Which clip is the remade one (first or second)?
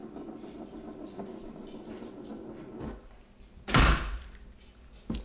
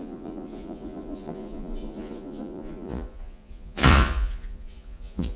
second